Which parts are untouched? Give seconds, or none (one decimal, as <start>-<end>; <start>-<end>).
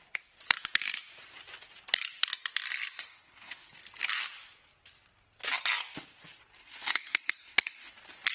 0.0-3.1; 3.7-6.6; 7.9-8.3